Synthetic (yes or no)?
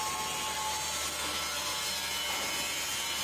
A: no